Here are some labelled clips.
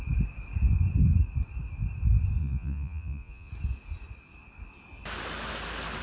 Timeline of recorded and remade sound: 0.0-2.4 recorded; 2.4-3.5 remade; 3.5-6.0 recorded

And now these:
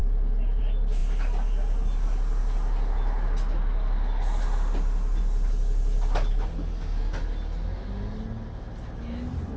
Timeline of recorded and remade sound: 0.0-9.6 recorded

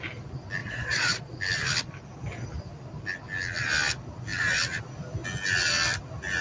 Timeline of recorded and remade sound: 0.0-0.6 recorded; 0.6-1.4 remade; 1.4-6.4 recorded

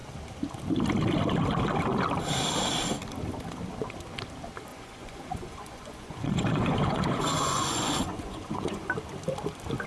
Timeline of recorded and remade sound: 0.0-4.7 recorded; 4.7-8.9 remade; 8.9-9.9 recorded

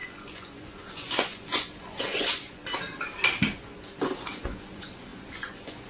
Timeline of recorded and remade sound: 0.0-2.6 remade; 2.6-3.5 recorded; 3.5-5.9 remade

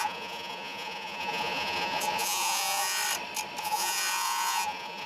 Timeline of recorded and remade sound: 0.0-3.0 remade; 3.0-3.6 recorded; 3.6-5.1 remade